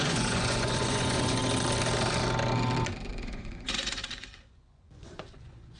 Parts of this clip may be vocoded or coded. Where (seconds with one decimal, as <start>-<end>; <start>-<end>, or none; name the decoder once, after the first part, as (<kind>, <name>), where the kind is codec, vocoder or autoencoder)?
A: 0.0-1.4 (vocoder, Vocos); 3.1-5.8